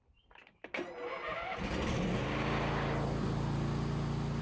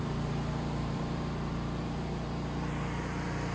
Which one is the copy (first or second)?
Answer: second